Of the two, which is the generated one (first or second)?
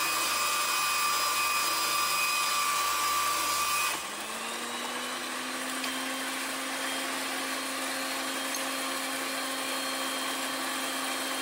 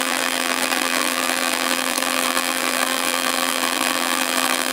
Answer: second